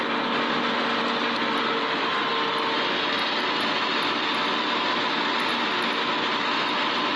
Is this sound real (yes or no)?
yes